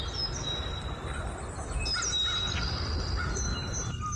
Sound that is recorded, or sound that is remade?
recorded